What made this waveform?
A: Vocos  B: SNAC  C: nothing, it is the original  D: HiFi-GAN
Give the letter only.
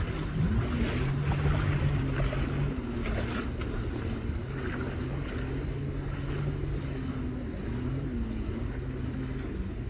C